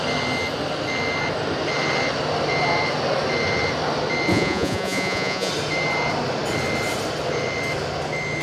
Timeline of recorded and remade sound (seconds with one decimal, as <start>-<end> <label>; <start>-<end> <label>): 0.0-4.3 recorded; 4.3-5.5 remade; 5.5-8.4 recorded